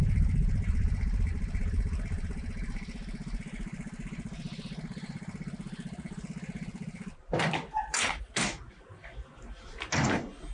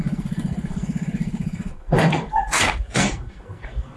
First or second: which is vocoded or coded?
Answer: second